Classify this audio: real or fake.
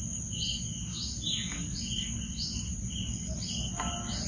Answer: real